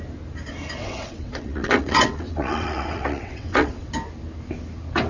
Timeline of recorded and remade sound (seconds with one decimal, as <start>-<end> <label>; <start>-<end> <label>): 0.0-0.8 recorded; 0.8-3.9 remade; 3.9-5.1 recorded